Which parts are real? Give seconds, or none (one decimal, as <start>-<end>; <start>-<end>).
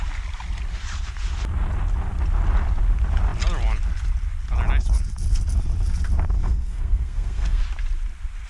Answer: 0.0-6.4; 7.6-8.5